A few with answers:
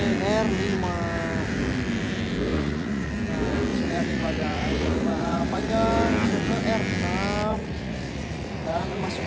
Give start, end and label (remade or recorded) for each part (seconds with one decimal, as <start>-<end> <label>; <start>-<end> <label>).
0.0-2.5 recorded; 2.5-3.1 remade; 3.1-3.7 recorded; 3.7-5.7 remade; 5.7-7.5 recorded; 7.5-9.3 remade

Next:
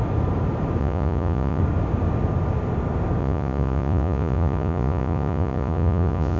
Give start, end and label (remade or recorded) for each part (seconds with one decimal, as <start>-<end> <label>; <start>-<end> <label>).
0.0-0.8 recorded; 0.8-1.6 remade; 1.6-3.2 recorded; 3.2-6.4 remade

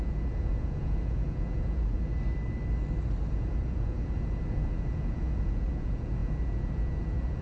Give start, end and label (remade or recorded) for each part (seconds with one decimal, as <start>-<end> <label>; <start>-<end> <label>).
0.0-2.1 remade; 2.1-3.3 recorded; 3.3-7.4 remade